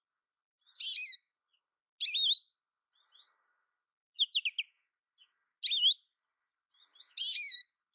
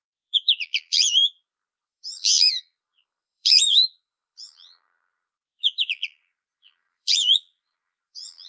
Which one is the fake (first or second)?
second